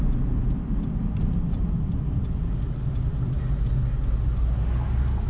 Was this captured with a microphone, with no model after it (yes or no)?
yes